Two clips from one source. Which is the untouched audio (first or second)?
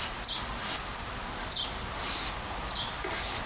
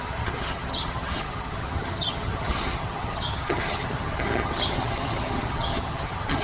first